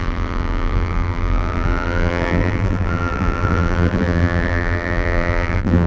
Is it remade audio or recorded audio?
remade